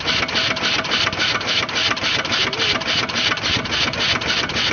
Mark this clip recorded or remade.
recorded